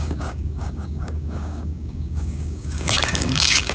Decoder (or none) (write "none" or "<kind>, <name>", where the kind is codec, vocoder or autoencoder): codec, DAC